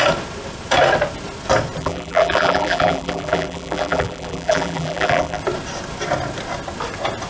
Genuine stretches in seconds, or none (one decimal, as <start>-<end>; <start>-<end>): 0.0-1.8; 5.4-7.3